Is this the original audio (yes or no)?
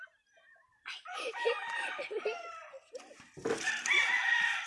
no